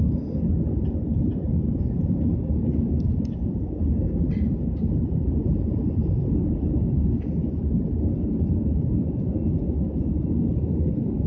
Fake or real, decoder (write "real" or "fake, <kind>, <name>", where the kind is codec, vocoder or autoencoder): real